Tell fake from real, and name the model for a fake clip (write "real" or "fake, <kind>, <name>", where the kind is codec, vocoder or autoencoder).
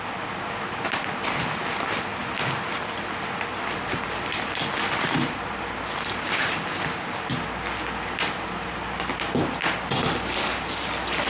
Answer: fake, vocoder, BigVGAN v2